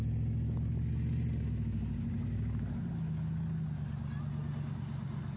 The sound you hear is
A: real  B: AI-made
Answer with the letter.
A